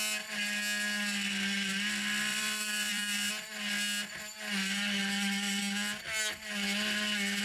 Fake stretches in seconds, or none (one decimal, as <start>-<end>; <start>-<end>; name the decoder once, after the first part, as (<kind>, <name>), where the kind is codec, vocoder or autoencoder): 2.3-3.3 (vocoder, BigVGAN v2); 5.0-5.6